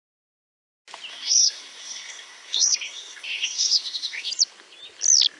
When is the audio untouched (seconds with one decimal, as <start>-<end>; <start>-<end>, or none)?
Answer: 0.0-1.1; 4.3-5.4